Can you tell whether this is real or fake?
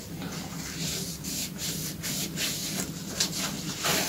real